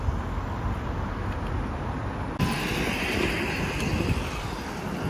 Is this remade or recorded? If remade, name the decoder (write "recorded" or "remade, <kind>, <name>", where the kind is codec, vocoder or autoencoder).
recorded